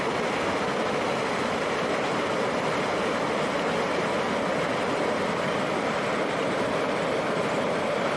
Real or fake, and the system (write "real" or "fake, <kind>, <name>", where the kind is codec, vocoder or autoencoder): real